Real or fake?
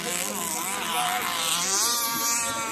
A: real